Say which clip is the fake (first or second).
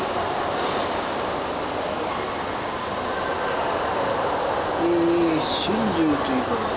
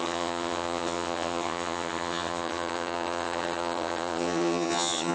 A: second